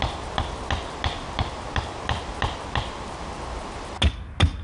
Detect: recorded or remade recorded